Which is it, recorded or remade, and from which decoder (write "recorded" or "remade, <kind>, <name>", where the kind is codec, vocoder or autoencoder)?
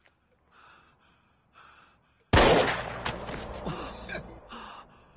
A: recorded